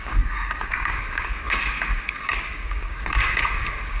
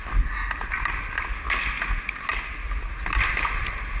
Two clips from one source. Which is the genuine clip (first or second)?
second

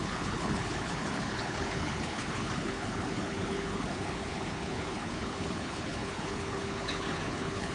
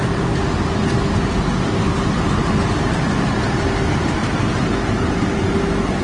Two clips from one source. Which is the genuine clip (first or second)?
second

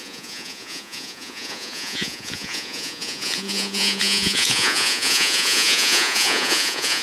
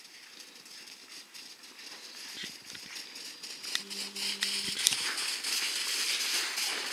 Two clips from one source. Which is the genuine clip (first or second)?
second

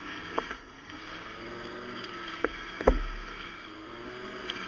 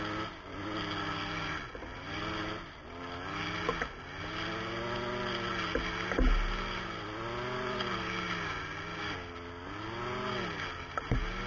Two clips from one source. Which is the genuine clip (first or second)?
second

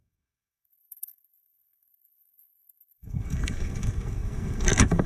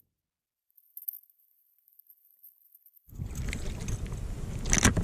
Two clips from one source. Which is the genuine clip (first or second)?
second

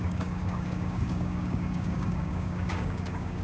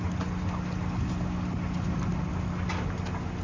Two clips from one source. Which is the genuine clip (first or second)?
second